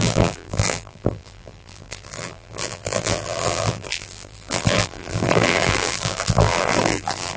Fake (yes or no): yes